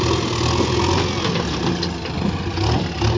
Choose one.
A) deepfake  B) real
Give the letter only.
B